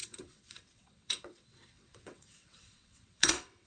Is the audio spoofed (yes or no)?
yes